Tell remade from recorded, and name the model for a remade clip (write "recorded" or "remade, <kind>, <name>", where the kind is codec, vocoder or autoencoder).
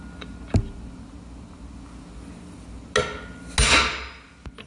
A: recorded